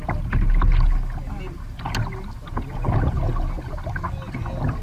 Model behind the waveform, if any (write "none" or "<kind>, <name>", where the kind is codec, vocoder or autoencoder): none